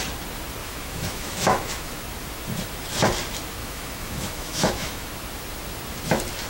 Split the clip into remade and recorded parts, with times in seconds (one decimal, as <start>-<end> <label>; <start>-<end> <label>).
0.0-0.6 recorded; 0.6-2.0 remade; 2.0-3.6 recorded; 3.6-5.1 remade; 5.1-6.5 recorded